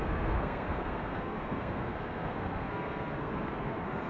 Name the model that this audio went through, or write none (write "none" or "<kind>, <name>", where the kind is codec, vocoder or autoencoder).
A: codec, SNAC